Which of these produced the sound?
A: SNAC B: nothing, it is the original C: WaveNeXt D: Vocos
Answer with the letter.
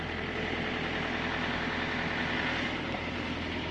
B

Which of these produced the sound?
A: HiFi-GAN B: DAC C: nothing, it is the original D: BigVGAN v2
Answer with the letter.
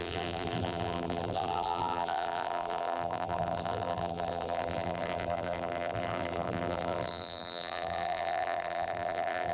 D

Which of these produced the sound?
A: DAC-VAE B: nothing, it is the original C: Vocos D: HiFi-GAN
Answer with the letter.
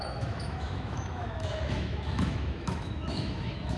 A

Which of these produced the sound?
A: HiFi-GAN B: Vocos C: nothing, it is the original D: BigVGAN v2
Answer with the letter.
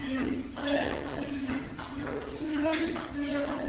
A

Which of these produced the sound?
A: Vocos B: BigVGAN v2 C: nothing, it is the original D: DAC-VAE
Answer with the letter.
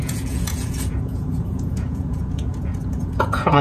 A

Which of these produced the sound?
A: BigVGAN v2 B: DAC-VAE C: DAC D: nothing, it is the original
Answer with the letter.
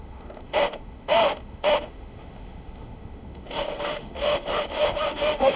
B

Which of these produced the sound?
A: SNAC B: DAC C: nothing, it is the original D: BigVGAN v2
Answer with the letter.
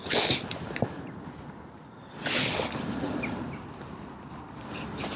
C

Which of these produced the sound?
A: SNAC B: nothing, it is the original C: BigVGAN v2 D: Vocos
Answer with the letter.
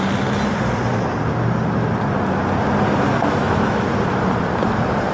B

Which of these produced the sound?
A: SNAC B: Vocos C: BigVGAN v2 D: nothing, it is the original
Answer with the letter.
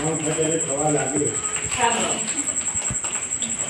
D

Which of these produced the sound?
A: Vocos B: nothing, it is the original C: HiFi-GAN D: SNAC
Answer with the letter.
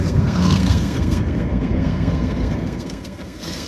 D